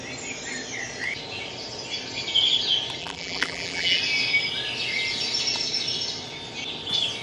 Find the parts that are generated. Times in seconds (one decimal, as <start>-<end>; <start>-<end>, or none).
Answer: 3.0-4.0